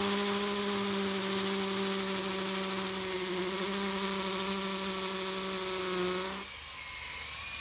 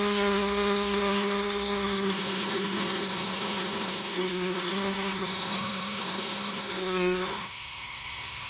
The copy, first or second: second